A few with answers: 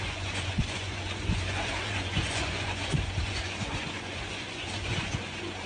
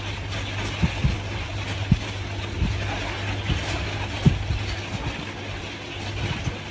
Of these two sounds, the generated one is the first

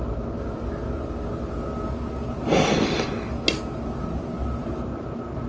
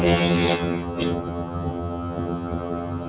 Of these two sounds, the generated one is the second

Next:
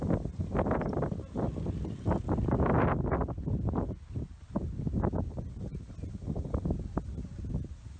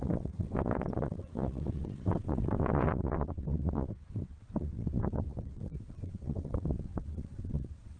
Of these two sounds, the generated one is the second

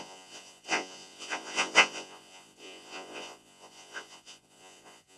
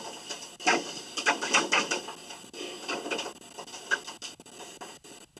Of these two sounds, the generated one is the first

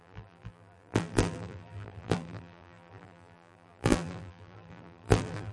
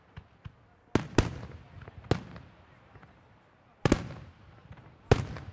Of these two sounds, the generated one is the first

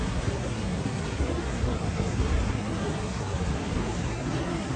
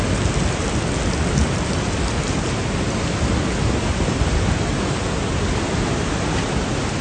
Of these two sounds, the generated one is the first